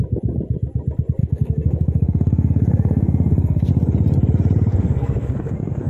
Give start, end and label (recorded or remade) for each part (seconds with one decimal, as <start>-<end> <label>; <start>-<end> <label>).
0.0-1.2 recorded; 1.2-3.7 remade; 3.7-4.7 recorded; 4.7-5.9 remade